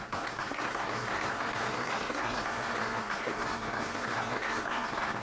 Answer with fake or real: fake